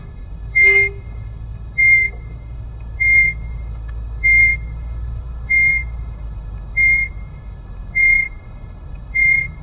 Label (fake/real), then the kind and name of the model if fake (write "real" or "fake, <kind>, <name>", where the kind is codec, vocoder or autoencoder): fake, autoencoder, DAC-VAE